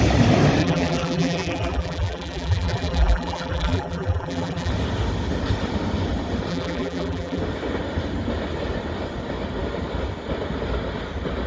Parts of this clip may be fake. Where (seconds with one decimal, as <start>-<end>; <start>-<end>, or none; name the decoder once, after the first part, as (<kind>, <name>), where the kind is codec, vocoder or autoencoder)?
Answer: 0.6-4.7 (vocoder, BigVGAN v2); 6.5-7.4